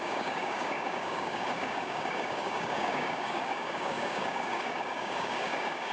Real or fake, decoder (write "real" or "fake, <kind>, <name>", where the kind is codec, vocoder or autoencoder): fake, codec, DAC